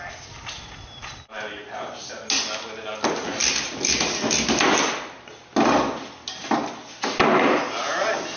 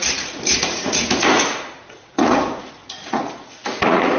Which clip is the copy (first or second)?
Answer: second